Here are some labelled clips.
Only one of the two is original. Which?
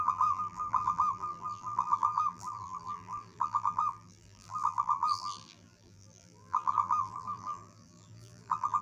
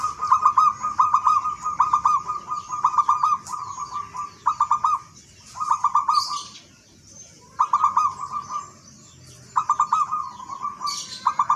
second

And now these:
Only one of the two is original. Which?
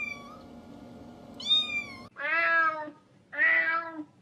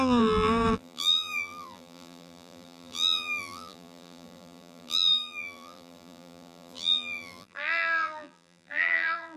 first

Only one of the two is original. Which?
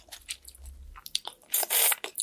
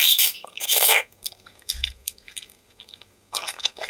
first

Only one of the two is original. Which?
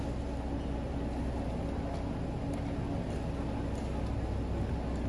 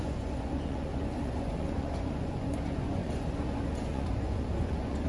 first